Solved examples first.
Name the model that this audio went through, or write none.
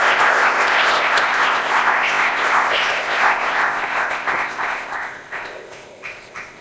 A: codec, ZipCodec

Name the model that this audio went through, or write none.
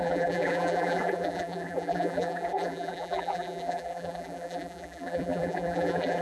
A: vocoder, BigVGAN v2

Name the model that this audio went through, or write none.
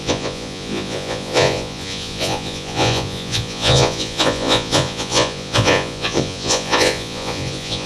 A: vocoder, Vocos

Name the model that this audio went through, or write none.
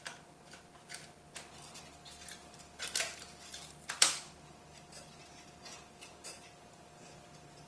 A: none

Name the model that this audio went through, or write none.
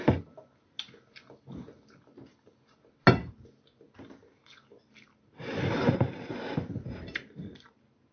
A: none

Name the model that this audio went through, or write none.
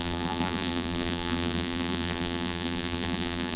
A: vocoder, BigVGAN v2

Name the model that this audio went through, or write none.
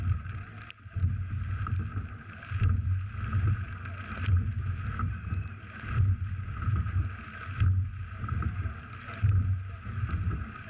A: none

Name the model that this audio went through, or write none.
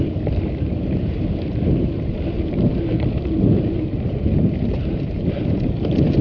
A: vocoder, BigVGAN v2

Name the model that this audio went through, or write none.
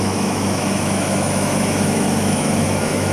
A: autoencoder, DAC-VAE